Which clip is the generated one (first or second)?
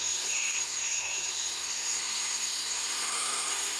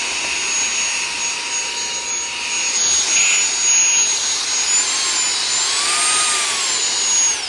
first